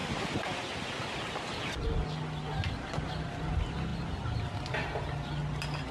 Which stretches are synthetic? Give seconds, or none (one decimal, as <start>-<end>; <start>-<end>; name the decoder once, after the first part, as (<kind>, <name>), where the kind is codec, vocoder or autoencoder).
none